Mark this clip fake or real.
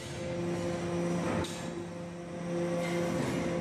real